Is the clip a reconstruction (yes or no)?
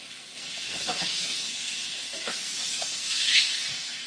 yes